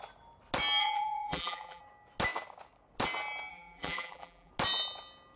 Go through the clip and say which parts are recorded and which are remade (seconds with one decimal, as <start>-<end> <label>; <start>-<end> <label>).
0.0-0.8 recorded; 0.8-1.8 remade; 1.8-3.5 recorded; 3.5-4.5 remade; 4.5-5.4 recorded